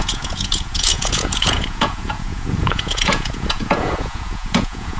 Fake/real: fake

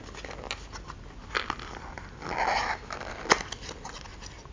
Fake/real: real